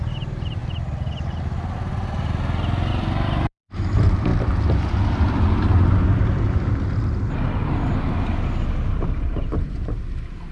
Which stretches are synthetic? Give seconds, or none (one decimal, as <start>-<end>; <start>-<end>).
0.0-0.6; 2.9-4.3; 8.9-10.5